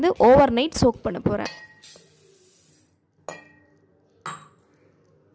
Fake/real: real